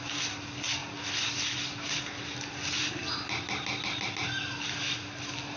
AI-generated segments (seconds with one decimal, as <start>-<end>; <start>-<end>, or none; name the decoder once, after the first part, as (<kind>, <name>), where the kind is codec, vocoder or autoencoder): none

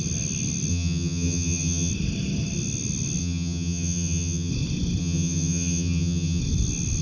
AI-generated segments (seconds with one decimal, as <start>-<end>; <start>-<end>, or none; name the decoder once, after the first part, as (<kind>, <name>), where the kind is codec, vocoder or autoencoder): 0.7-1.9 (vocoder, HiFi-GAN); 3.2-4.5; 5.0-6.4

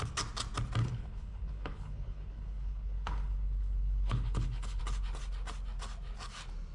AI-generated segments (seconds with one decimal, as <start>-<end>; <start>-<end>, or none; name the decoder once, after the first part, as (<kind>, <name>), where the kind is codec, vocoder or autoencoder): 0.8-4.8 (codec, HILCodec)

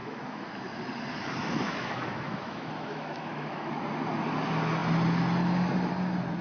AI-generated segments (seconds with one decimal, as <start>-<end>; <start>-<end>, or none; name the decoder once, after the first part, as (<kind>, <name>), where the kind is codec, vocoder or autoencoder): 0.0-0.5 (autoencoder, DAC-VAE); 1.2-3.7